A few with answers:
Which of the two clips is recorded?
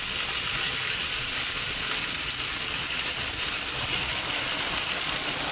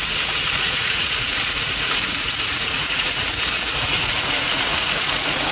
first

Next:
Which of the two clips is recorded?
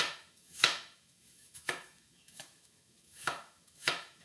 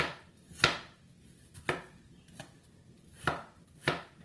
second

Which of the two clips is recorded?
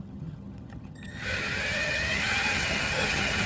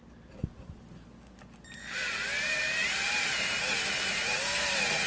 second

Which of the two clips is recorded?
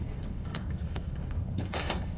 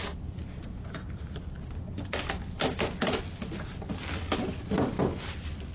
second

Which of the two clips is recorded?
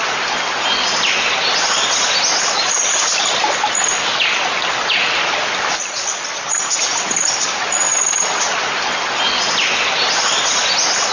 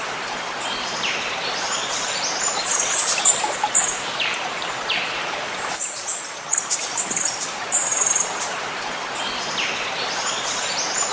first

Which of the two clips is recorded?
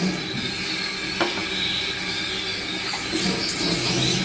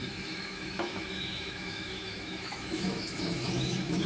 first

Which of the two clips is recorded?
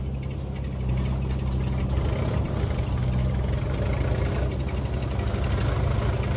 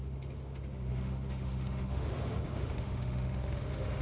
first